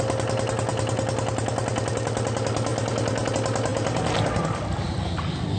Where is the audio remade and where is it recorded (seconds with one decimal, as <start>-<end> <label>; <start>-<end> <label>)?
0.0-5.6 recorded